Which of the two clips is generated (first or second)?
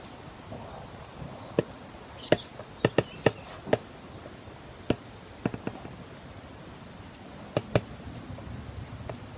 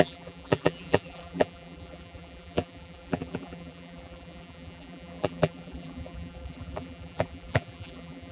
second